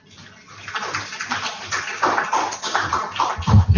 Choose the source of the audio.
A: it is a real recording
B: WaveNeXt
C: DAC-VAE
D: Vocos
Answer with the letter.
A